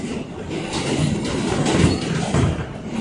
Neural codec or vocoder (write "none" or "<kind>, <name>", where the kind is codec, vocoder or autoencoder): none